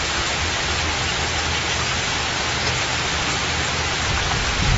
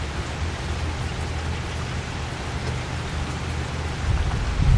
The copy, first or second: first